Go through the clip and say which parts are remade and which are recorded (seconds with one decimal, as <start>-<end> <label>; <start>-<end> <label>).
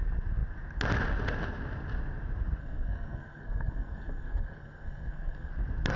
0.0-2.6 recorded; 2.6-5.5 remade; 5.5-6.0 recorded